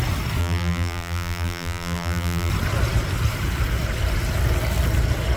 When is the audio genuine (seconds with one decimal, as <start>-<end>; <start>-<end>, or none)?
0.0-0.4; 2.5-5.4